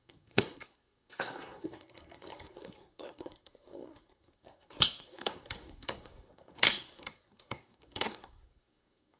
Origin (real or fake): fake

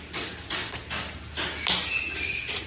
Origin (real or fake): real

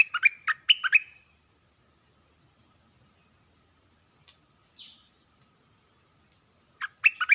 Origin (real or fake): real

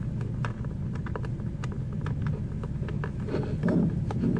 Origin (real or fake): real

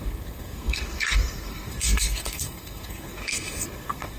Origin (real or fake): fake